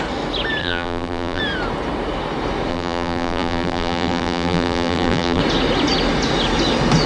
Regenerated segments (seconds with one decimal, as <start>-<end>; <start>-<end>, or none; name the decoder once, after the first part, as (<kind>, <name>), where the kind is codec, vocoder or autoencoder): 0.6-1.4 (vocoder, BigVGAN v2); 2.7-5.4